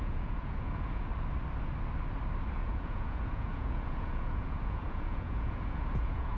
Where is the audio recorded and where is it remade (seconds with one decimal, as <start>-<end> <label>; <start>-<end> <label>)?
0.0-1.1 remade; 1.1-2.5 recorded; 2.5-6.4 remade